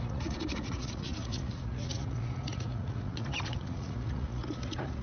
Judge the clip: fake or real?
fake